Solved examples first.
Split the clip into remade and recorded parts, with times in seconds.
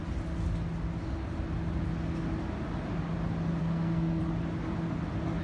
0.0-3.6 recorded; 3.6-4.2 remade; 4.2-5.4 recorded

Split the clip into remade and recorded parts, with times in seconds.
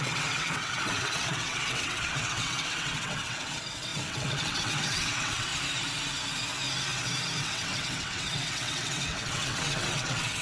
0.0-5.5 remade; 5.5-7.4 recorded; 7.4-10.4 remade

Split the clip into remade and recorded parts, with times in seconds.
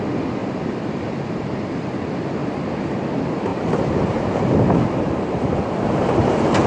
0.0-0.4 recorded; 0.4-1.8 remade; 1.8-2.4 recorded; 2.4-2.9 remade; 2.9-3.5 recorded; 3.5-6.7 remade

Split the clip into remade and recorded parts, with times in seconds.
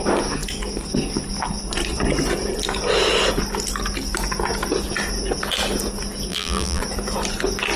0.0-6.3 recorded; 6.3-6.8 remade; 6.8-7.8 recorded